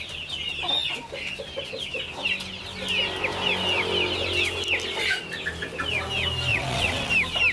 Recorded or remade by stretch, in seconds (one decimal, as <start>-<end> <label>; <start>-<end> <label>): 0.0-6.5 recorded; 6.5-7.1 remade; 7.1-7.5 recorded